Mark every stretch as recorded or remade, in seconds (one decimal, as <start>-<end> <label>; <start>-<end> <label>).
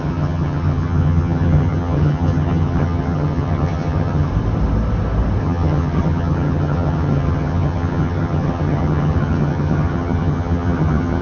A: 0.0-4.3 remade; 4.3-5.4 recorded; 5.4-11.2 remade